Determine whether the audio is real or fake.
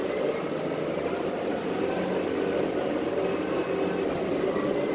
real